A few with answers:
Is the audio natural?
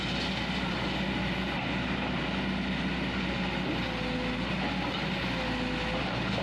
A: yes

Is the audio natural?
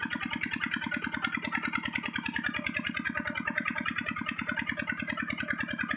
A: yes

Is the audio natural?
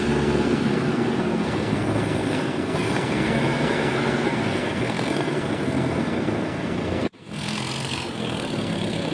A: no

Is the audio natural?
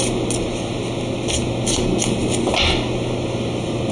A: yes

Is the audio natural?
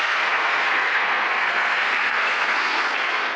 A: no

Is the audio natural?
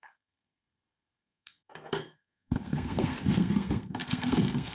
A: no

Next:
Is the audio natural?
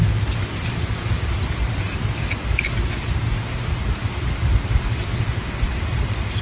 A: yes